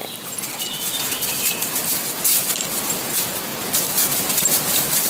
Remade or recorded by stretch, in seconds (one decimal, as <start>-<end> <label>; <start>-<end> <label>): 0.0-5.1 recorded